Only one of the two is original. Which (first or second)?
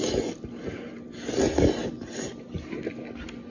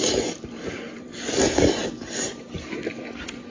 first